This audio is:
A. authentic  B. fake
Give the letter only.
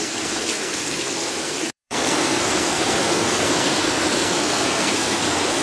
B